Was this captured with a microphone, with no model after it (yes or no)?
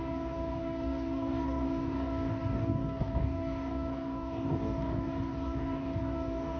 no